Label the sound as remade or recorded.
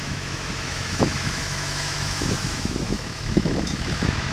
remade